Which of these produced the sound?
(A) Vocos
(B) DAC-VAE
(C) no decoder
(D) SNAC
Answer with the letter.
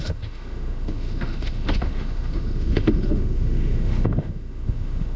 B